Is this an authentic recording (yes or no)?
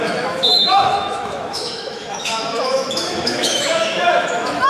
no